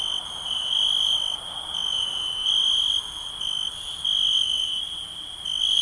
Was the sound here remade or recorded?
recorded